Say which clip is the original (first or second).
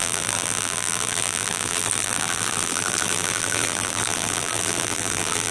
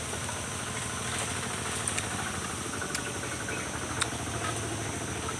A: second